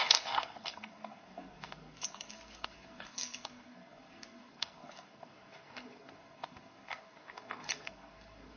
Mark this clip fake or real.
fake